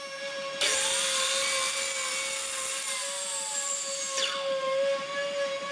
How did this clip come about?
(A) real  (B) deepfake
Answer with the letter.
A